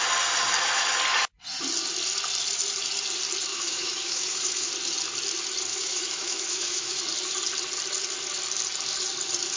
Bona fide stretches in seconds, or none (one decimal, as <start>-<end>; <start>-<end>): 0.0-3.5; 4.7-5.7; 7.0-9.6